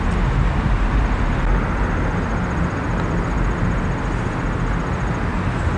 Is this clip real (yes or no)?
yes